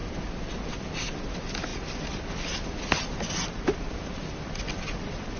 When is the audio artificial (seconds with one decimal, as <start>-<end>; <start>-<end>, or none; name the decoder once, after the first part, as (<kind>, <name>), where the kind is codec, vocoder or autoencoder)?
none